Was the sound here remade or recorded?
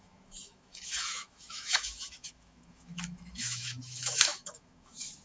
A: remade